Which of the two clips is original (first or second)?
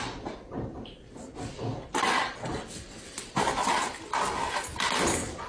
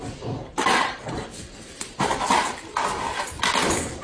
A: first